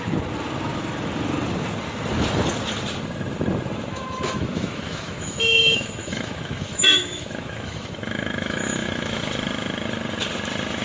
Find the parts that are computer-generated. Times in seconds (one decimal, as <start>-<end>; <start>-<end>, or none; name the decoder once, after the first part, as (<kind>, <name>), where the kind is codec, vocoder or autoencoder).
3.9-9.2 (autoencoder, DAC-VAE)